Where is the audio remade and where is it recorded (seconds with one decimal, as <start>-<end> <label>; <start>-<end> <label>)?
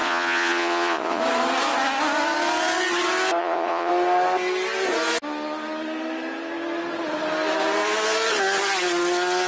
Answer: 0.0-1.2 remade; 1.2-3.4 recorded; 3.4-3.9 remade; 3.9-9.5 recorded